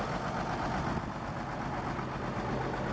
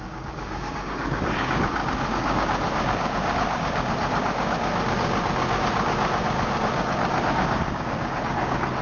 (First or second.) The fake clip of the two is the second